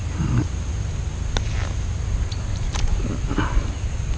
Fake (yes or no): no